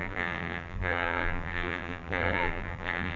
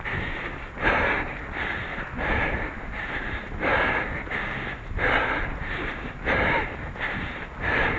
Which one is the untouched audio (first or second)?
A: second